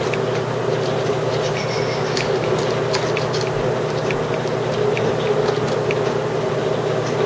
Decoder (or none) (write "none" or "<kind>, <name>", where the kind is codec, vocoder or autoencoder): none